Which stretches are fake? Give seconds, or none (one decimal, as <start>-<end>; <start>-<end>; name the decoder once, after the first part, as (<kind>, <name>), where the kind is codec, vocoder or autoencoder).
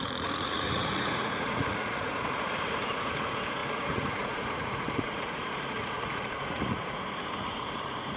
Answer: 0.0-8.2 (vocoder, Vocos)